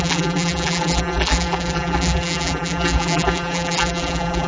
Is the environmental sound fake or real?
fake